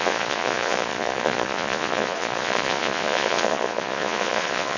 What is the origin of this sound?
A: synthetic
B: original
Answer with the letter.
A